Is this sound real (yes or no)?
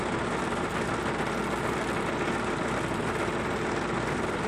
yes